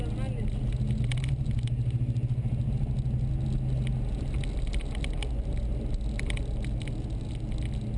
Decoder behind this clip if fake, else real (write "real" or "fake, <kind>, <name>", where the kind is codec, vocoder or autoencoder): real